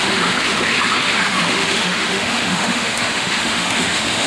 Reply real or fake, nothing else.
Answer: fake